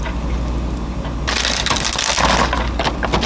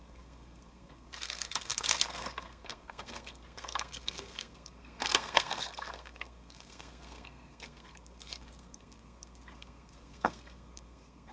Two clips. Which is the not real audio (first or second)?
second